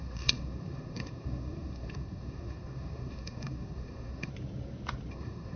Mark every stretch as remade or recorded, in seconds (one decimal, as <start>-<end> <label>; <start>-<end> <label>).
0.0-4.3 remade; 4.3-5.1 recorded; 5.1-5.6 remade